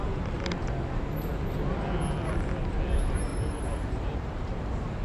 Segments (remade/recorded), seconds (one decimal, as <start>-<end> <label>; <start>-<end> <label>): 0.0-3.3 recorded; 3.3-4.3 remade; 4.3-5.0 recorded